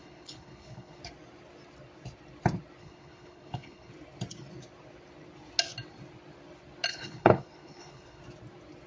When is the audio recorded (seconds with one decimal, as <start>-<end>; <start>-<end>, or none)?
1.0-2.8; 3.9-6.9; 8.2-8.9